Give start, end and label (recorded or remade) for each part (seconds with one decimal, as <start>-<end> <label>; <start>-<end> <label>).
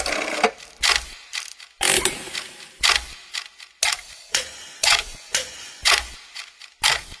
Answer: 0.0-4.2 recorded; 4.2-6.1 remade; 6.1-7.2 recorded